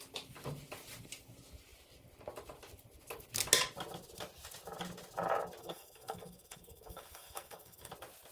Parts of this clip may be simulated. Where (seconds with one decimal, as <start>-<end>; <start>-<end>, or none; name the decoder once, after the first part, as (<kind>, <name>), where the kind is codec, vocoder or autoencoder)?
5.6-7.9 (codec, SNAC)